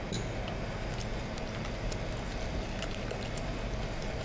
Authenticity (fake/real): real